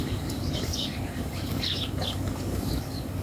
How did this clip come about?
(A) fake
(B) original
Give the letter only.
A